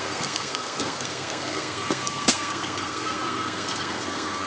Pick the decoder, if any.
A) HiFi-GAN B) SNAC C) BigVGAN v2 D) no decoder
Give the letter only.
B